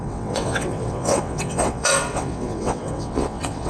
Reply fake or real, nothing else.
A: fake